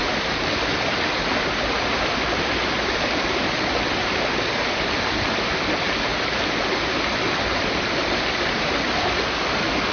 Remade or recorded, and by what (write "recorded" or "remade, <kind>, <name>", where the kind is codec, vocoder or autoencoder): recorded